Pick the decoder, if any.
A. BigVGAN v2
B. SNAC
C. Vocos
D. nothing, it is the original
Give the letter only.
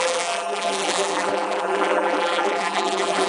A